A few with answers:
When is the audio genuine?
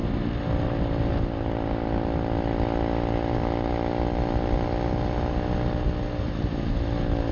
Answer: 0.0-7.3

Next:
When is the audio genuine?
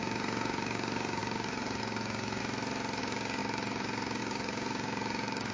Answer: 2.4-3.0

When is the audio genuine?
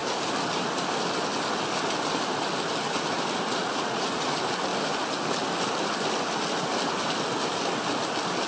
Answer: 0.0-3.6; 4.3-8.5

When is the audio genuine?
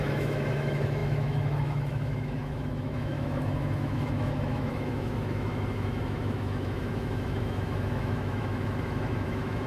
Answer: none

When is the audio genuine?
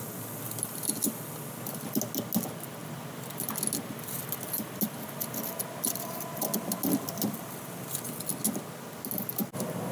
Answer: 0.0-9.9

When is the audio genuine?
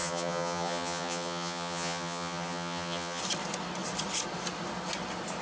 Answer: 3.2-5.4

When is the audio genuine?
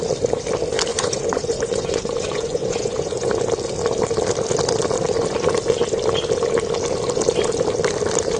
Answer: 0.0-0.9; 3.3-8.4